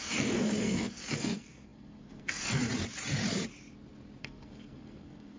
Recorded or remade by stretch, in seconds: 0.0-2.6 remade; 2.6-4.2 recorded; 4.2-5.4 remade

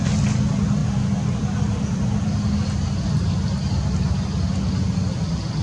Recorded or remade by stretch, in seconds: 0.0-5.6 recorded

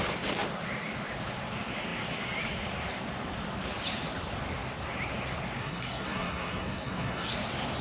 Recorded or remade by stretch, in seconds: 0.0-5.6 recorded; 5.6-7.3 remade; 7.3-7.8 recorded

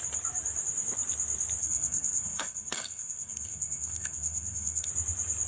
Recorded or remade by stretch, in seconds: 0.0-1.6 recorded; 1.6-4.9 remade; 4.9-5.5 recorded

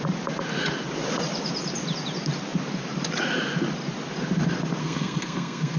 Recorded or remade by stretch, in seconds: 0.0-4.8 recorded; 4.8-5.8 remade

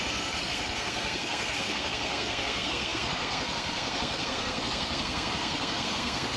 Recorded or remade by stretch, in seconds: 0.0-6.4 remade

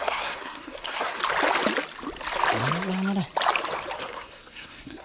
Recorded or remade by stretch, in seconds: 0.0-1.2 remade; 1.2-4.0 recorded; 4.0-5.0 remade